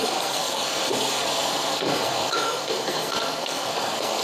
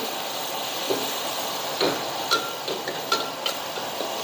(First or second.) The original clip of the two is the second